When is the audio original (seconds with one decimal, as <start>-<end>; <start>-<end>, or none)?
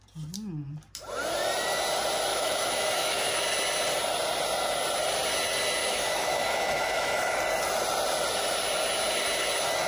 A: 0.0-2.3; 3.4-5.8; 7.4-9.9